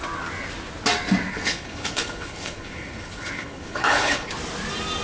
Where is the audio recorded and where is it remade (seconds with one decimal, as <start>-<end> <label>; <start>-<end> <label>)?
0.0-1.3 recorded; 1.3-4.3 remade; 4.3-5.0 recorded